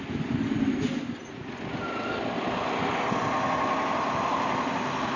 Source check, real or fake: real